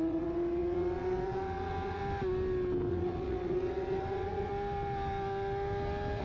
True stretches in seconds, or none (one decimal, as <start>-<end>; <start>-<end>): 2.0-2.9; 4.5-6.2